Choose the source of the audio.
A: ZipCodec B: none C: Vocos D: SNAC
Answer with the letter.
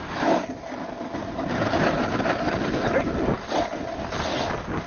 B